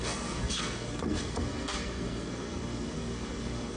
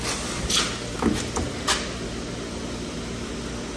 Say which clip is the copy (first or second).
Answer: first